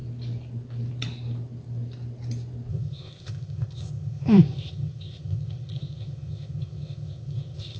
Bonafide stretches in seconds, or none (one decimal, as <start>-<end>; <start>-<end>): 0.0-2.7